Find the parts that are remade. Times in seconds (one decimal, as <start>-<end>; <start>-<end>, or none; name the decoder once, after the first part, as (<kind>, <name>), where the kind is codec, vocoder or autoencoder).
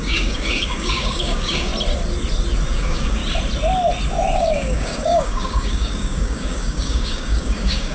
0.0-1.7 (codec, DAC); 2.7-3.2; 4.4-7.9